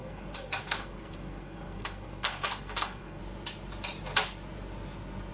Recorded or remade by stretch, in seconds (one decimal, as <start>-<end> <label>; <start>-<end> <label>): 0.0-3.2 remade; 3.2-5.3 recorded